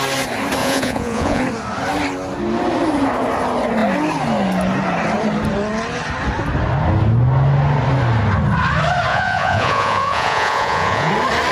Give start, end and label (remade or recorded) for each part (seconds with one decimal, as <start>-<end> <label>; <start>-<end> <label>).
0.0-0.6 recorded; 0.6-1.4 remade; 1.4-9.1 recorded; 9.1-11.1 remade; 11.1-11.5 recorded

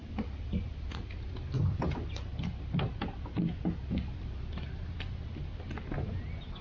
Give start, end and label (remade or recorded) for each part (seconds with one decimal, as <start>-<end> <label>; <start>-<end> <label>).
0.0-6.6 recorded

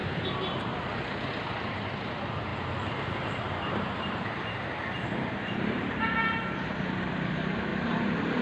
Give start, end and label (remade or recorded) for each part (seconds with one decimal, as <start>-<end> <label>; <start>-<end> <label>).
0.0-0.8 remade; 0.8-2.5 recorded; 2.5-7.3 remade; 7.3-8.4 recorded

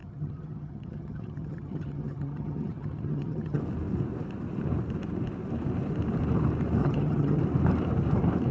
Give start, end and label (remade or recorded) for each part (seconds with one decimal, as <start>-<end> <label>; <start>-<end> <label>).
0.0-3.6 remade; 3.6-6.8 recorded; 6.8-7.4 remade; 7.4-8.5 recorded

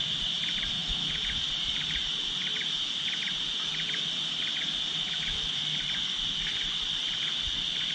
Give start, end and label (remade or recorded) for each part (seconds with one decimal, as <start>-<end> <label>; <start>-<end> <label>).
0.0-7.9 recorded

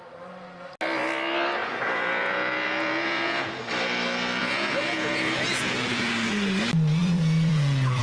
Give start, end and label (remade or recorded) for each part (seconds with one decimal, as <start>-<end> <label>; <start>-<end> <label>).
0.0-1.6 recorded; 1.6-3.6 remade; 3.6-4.4 recorded; 4.4-6.1 remade; 6.1-7.0 recorded; 7.0-8.0 remade